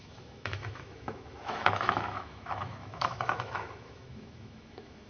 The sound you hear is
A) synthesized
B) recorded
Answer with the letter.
A